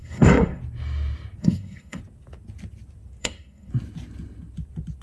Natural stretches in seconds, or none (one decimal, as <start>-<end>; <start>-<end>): 0.6-1.4; 2.0-3.2; 3.7-5.0